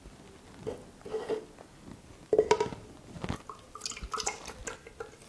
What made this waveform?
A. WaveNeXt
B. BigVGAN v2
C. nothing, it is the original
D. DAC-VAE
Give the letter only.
C